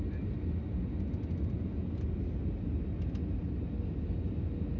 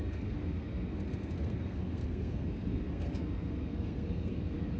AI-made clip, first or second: second